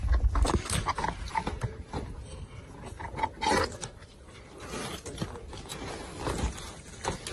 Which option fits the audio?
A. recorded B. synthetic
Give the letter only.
A